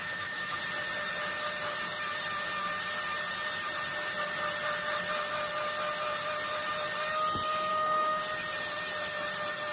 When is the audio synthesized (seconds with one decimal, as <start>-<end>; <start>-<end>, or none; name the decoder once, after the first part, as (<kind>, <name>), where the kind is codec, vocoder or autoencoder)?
0.0-0.6 (autoencoder, DAC-VAE); 7.7-8.2